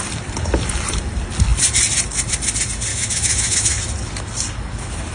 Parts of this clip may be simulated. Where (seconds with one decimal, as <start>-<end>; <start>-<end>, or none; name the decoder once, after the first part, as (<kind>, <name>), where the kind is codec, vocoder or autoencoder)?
2.9-3.8 (autoencoder, DAC-VAE)

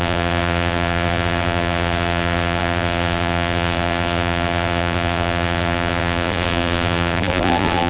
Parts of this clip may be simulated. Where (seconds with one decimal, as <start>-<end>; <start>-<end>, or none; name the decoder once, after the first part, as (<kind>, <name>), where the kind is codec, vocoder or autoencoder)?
0.0-7.9 (vocoder, BigVGAN v2)

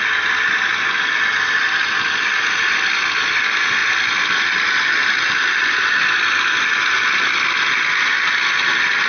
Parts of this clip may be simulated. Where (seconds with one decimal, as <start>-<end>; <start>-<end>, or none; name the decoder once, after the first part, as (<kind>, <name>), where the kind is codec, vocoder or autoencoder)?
none

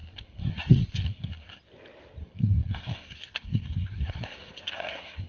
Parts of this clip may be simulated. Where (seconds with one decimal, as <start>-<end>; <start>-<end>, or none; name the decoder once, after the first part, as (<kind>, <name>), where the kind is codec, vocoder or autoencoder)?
0.0-1.6 (codec, SNAC); 2.2-5.3

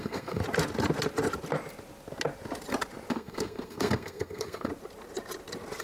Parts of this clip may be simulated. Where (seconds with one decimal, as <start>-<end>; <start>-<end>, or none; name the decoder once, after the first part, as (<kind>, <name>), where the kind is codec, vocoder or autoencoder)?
0.0-0.4 (codec, SNAC); 3.1-4.7

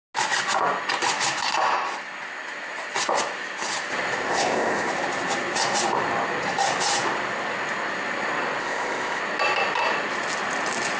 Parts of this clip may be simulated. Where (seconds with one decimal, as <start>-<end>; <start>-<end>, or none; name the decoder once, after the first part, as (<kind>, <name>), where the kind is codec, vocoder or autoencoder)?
4.3-4.9 (codec, ZipCodec); 8.6-9.2

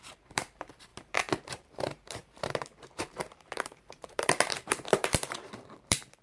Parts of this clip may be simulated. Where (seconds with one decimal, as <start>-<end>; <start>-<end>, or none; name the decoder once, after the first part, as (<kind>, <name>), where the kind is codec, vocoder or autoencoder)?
0.0-6.2 (vocoder, BigVGAN v2)